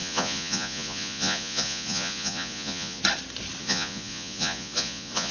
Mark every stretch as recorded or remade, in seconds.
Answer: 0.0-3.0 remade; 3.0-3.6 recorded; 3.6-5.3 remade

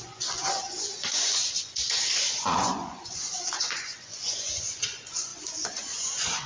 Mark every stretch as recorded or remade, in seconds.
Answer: 0.0-6.5 remade

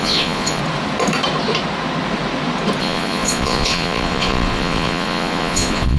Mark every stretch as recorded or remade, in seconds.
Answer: 0.0-0.6 remade; 0.6-2.8 recorded; 2.8-6.0 remade

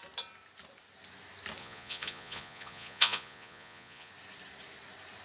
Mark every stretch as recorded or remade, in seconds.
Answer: 0.0-1.6 recorded; 1.6-4.1 remade; 4.1-5.2 recorded

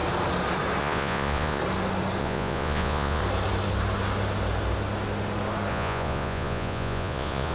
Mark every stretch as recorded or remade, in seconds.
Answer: 0.0-0.8 recorded; 0.8-1.6 remade; 1.6-2.2 recorded; 2.2-3.2 remade; 3.2-5.7 recorded; 5.7-7.5 remade

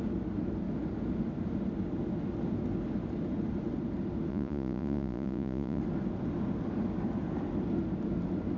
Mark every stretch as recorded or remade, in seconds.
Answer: 0.0-4.3 recorded; 4.3-5.8 remade; 5.8-8.6 recorded

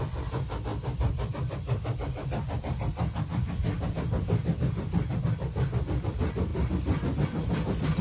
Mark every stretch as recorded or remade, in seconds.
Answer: 0.0-8.0 recorded

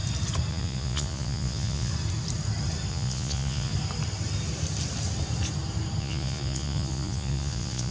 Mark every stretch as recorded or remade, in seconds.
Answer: 0.0-0.5 recorded; 0.5-1.9 remade; 1.9-2.9 recorded; 2.9-3.7 remade; 3.7-6.0 recorded; 6.0-7.9 remade